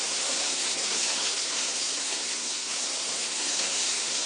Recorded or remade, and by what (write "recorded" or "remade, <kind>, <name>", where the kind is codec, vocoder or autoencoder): remade, codec, SNAC